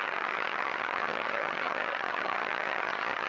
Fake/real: fake